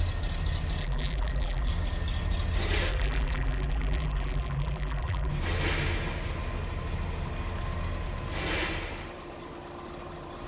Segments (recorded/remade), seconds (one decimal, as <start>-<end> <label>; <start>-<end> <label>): 0.0-0.8 recorded; 0.8-1.7 remade; 1.7-2.9 recorded; 2.9-5.3 remade; 5.3-10.5 recorded